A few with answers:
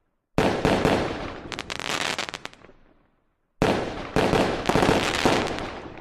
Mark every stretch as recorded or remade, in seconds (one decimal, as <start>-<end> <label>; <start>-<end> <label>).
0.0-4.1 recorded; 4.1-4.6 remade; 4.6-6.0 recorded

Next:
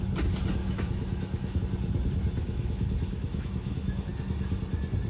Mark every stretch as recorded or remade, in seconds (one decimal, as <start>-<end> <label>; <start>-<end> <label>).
0.0-0.6 recorded; 0.6-1.6 remade; 1.6-2.4 recorded; 2.4-4.1 remade; 4.1-5.1 recorded

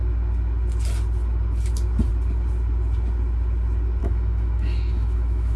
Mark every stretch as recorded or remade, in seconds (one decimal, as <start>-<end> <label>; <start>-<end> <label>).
0.0-4.0 recorded; 4.0-5.6 remade